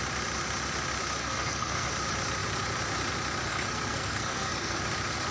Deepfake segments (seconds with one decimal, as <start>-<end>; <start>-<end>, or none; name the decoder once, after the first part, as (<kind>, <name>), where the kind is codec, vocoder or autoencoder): 1.2-1.9 (codec, SNAC); 3.5-4.8

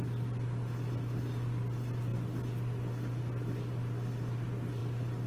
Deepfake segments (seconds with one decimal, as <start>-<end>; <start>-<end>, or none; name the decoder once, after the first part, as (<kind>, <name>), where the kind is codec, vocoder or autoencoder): none

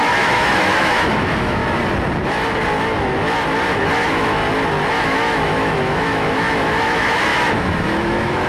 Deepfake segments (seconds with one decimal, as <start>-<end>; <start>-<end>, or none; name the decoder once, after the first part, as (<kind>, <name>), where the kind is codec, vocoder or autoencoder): 0.0-1.6 (autoencoder, DAC-VAE); 3.8-4.4; 5.0-8.5

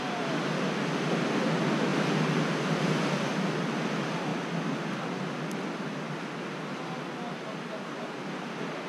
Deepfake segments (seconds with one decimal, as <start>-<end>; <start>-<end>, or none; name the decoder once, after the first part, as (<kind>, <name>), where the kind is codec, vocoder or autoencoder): none

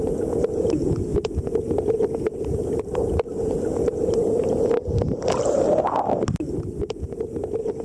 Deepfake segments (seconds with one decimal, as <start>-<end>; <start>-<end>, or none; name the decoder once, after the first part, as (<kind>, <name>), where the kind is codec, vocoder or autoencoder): none

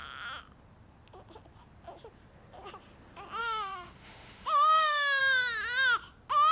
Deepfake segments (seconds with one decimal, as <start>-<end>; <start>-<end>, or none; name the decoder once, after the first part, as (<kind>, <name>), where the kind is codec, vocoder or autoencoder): 3.4-5.2 (autoencoder, DAC-VAE)

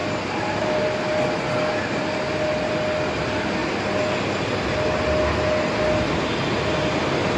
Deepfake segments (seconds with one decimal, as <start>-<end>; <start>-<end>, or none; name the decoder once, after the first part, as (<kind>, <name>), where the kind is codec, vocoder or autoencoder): none